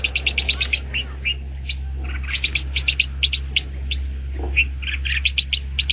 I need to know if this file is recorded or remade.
recorded